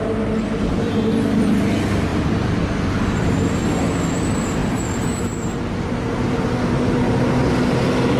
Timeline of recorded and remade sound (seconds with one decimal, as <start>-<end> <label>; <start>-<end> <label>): 0.0-2.1 recorded; 2.1-2.6 remade; 2.6-4.6 recorded; 4.6-5.7 remade; 5.7-8.2 recorded